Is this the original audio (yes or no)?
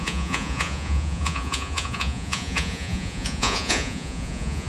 no